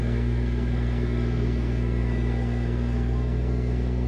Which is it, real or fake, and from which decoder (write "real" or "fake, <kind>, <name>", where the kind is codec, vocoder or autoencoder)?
fake, codec, SNAC